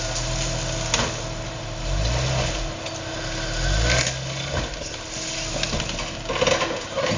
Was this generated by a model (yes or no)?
no